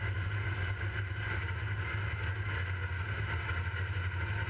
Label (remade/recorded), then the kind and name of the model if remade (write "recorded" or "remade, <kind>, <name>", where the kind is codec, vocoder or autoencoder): recorded